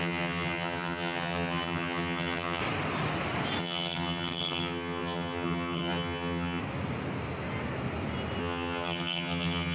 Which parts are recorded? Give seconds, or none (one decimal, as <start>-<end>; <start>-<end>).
2.6-3.6; 6.6-8.4